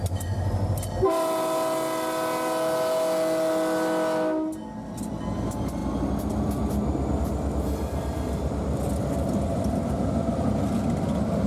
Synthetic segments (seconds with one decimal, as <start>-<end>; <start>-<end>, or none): none